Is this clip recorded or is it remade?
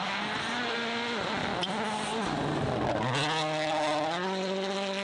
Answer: recorded